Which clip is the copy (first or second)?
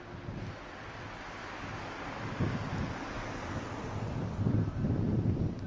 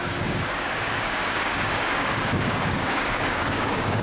second